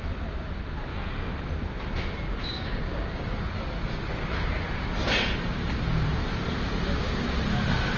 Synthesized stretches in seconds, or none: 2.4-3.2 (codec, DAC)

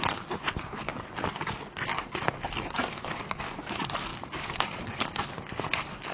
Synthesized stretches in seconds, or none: 1.9-3.4 (codec, DAC); 4.1-5.3